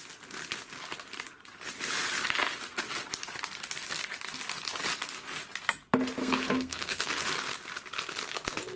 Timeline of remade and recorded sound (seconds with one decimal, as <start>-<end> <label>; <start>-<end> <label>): 0.0-6.2 recorded; 6.2-7.1 remade; 7.1-8.8 recorded